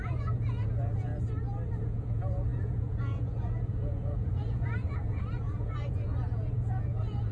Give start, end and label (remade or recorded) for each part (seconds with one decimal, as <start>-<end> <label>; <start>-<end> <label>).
0.0-1.1 remade; 1.1-1.8 recorded; 1.8-7.3 remade